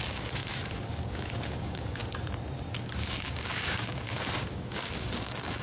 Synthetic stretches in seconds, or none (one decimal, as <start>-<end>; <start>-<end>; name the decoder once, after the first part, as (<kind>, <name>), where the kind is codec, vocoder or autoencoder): 0.0-2.0 (codec, DAC); 2.7-5.6